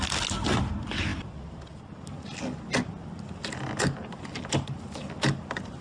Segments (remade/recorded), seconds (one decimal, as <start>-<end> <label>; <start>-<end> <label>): 0.0-5.8 recorded